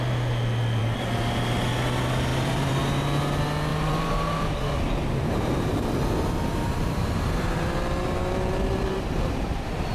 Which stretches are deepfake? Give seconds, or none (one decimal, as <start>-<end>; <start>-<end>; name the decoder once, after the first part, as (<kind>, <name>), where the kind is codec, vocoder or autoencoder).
2.3-2.8 (vocoder, BigVGAN v2); 3.7-5.9; 6.5-9.9